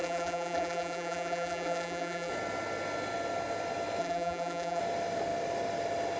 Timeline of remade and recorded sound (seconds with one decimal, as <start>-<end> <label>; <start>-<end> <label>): 0.0-2.3 remade; 2.3-4.0 recorded; 4.0-4.8 remade; 4.8-6.2 recorded